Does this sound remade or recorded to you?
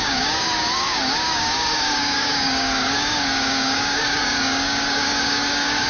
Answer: remade